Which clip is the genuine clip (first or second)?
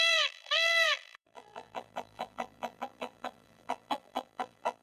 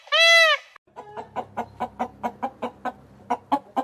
second